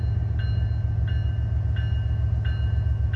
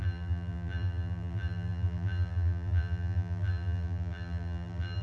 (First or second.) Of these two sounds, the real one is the first